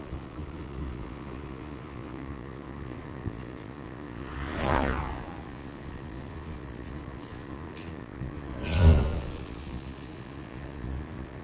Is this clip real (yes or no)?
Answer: no